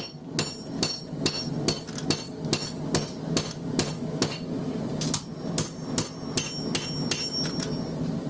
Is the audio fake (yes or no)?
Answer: no